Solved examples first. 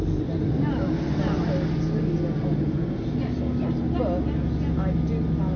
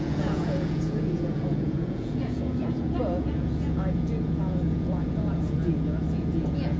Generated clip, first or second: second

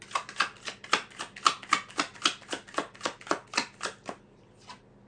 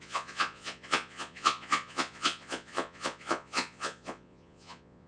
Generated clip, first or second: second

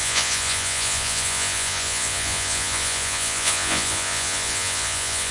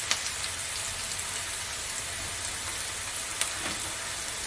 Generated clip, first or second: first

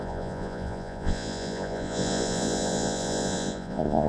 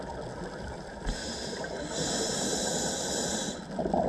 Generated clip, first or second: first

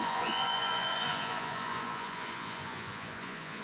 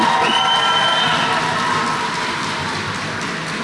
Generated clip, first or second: first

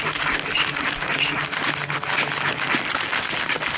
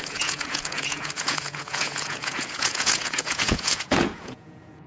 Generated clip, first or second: second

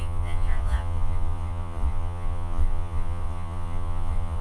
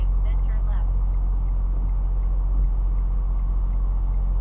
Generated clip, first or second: first